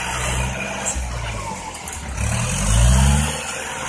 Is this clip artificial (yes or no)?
no